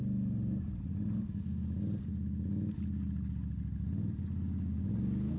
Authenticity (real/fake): real